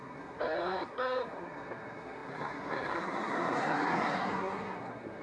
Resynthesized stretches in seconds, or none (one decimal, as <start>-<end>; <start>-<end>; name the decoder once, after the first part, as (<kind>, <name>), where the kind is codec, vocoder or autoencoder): 0.0-5.2 (codec, SNAC)